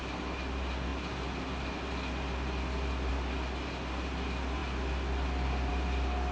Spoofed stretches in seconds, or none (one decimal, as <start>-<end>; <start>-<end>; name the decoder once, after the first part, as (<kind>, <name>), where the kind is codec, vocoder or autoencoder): none

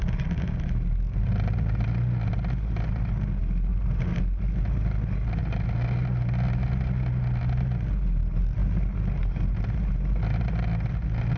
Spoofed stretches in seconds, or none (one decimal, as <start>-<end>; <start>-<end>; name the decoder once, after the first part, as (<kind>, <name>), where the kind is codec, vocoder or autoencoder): 3.7-4.2 (vocoder, BigVGAN v2)

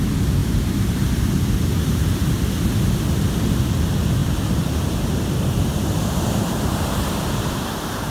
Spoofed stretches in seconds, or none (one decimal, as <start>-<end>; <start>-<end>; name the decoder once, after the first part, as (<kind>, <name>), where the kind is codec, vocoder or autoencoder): 0.4-2.4 (vocoder, BigVGAN v2); 4.2-7.0

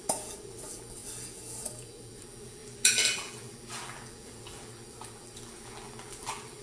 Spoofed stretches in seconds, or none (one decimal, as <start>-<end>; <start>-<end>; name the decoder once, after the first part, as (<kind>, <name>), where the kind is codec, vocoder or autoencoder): 0.0-6.6 (vocoder, BigVGAN v2)

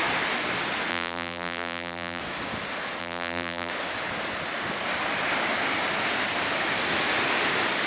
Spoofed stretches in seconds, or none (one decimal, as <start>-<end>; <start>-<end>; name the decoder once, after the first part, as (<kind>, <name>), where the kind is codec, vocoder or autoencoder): 0.9-2.2 (vocoder, BigVGAN v2); 3.0-3.7

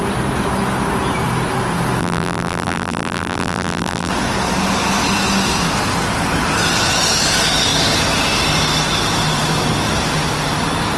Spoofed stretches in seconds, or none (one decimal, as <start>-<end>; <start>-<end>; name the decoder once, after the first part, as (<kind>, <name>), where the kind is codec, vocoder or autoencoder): 2.0-4.1 (vocoder, BigVGAN v2)

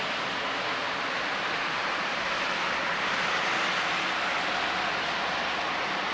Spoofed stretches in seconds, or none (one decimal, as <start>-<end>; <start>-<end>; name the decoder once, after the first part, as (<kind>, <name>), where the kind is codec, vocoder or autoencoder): 0.8-3.1 (vocoder, BigVGAN v2)